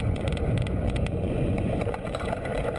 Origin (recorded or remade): remade